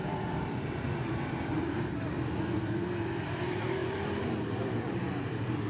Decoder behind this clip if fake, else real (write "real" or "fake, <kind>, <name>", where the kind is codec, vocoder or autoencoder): fake, vocoder, BigVGAN v2